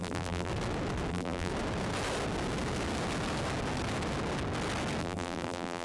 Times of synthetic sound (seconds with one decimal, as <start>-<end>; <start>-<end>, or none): 0.0-0.5; 1.1-1.5; 5.0-5.8